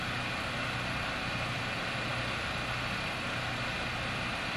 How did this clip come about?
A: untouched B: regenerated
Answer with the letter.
A